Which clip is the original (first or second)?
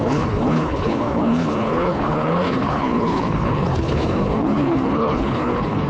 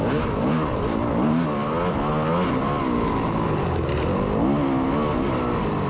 second